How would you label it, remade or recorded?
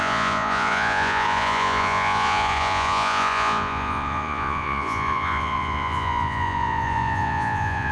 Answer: remade